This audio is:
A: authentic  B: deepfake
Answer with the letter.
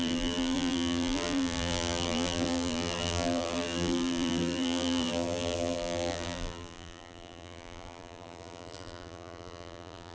B